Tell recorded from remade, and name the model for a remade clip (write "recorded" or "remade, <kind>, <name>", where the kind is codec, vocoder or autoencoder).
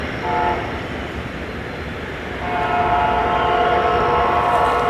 recorded